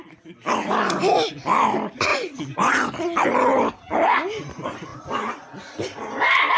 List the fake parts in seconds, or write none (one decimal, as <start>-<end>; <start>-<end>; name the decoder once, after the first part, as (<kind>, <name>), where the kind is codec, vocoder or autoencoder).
2.1-2.7 (vocoder, Vocos)